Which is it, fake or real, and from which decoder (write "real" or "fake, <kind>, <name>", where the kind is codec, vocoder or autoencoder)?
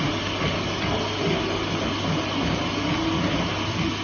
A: real